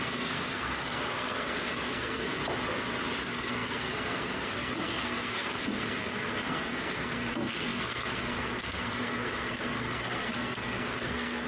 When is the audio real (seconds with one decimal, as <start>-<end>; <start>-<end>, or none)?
2.4-3.2